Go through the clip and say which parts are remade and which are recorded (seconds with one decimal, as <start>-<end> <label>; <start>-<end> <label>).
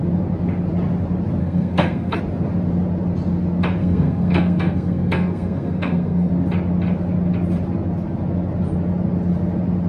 0.0-1.4 recorded; 1.4-2.2 remade; 2.2-3.8 recorded; 3.8-6.3 remade; 6.3-9.9 recorded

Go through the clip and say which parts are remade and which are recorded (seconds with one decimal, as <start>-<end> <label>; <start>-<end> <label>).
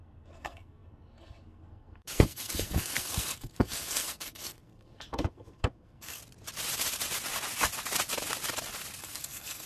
0.0-6.2 remade; 6.2-9.0 recorded; 9.0-9.7 remade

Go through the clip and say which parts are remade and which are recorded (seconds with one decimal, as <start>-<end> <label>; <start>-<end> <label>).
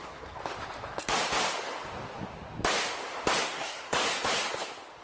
0.0-0.4 remade; 0.4-3.4 recorded; 3.4-4.0 remade; 4.0-5.0 recorded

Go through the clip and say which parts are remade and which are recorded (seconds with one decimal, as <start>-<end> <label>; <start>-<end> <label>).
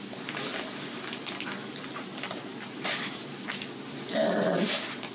0.0-5.1 recorded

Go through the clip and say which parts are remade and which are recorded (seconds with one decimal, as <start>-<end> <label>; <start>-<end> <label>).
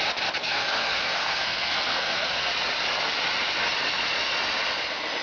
0.0-0.4 recorded; 0.4-2.5 remade; 2.5-5.2 recorded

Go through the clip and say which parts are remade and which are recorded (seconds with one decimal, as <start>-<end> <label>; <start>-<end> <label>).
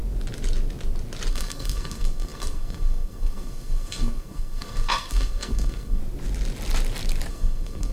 0.0-1.3 recorded; 1.3-6.0 remade; 6.0-7.3 recorded; 7.3-7.9 remade